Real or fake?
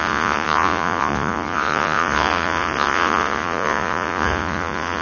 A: fake